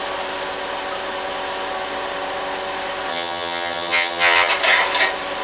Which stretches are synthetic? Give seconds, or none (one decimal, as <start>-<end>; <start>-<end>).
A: 3.1-4.5